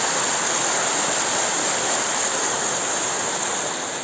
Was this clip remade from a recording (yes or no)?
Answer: no